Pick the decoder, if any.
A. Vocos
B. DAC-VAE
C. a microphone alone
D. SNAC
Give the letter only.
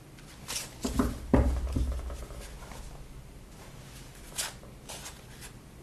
C